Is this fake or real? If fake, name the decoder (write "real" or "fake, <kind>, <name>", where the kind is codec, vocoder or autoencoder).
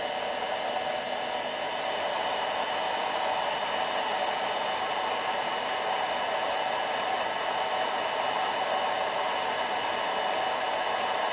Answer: real